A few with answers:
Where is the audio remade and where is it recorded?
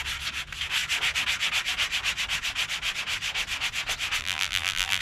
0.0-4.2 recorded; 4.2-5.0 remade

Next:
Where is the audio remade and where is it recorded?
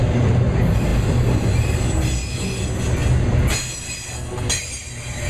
0.0-5.3 recorded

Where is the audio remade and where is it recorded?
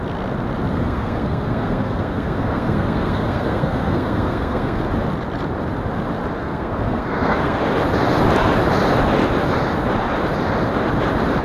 0.0-0.7 recorded; 0.7-4.8 remade; 4.8-6.4 recorded; 6.4-7.6 remade; 7.6-11.4 recorded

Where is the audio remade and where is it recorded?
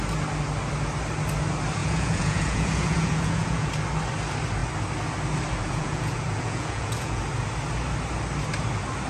0.0-1.8 recorded; 1.8-3.7 remade; 3.7-5.6 recorded; 5.6-7.2 remade; 7.2-9.1 recorded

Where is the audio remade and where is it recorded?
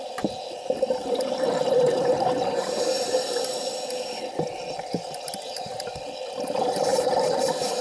0.0-1.0 recorded; 1.0-2.6 remade; 2.6-6.9 recorded; 6.9-7.8 remade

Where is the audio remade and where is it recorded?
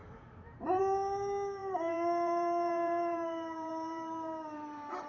0.0-0.8 remade; 0.8-1.6 recorded; 1.6-5.1 remade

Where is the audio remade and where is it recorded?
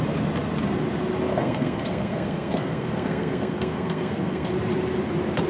0.0-1.3 recorded; 1.3-4.5 remade; 4.5-5.5 recorded